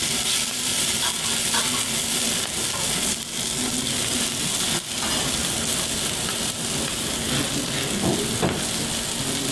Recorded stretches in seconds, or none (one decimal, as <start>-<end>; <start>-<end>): 0.0-9.5

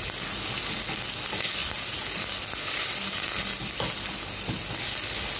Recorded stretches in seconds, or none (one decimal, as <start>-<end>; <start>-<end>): 0.0-5.4

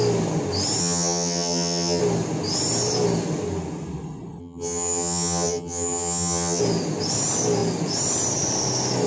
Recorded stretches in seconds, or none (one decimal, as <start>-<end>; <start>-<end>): 0.0-0.8; 2.0-4.4; 6.6-9.1

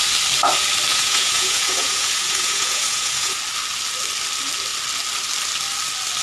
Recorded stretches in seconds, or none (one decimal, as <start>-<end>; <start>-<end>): 0.0-0.9; 3.4-6.2